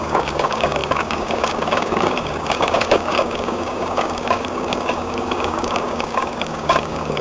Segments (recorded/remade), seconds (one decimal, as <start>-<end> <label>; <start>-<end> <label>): 0.0-7.2 remade